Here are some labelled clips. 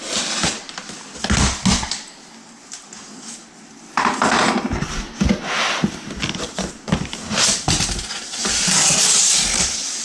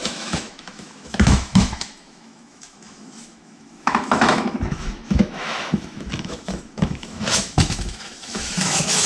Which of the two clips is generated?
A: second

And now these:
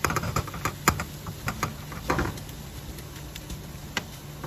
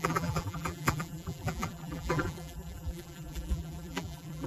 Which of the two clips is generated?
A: second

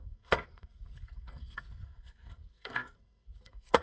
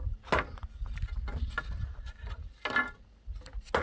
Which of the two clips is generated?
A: first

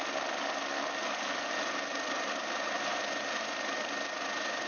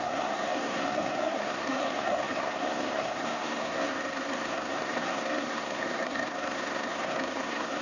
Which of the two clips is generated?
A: second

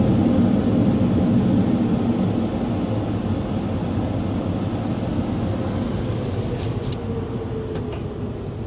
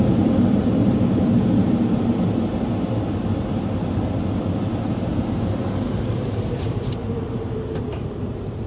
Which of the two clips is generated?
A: second